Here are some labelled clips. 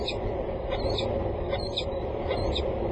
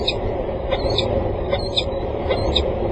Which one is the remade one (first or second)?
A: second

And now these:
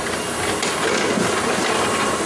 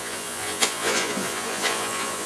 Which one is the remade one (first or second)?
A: second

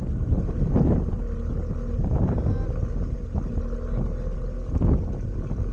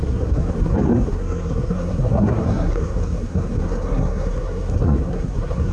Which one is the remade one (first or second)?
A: second